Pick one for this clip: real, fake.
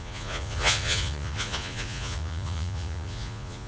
fake